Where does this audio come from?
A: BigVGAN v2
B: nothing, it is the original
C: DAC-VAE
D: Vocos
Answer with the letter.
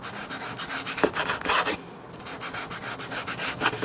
B